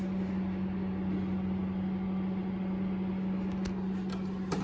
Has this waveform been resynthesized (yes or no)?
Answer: no